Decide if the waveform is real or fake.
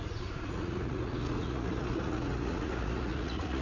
fake